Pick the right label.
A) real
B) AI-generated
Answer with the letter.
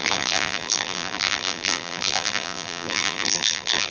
B